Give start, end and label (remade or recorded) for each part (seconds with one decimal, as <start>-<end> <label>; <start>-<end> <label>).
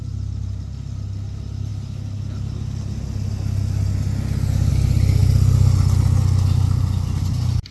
0.0-7.7 recorded